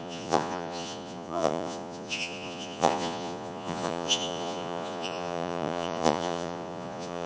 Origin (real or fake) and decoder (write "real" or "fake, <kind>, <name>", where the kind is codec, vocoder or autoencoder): fake, vocoder, Vocos